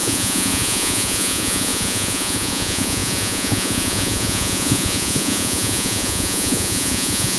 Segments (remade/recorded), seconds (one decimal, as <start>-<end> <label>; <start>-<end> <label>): 0.0-7.4 remade